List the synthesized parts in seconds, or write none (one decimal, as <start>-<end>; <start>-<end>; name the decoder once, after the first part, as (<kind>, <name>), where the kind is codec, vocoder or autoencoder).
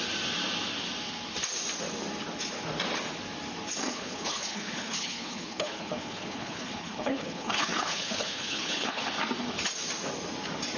3.8-9.0 (codec, HILCodec)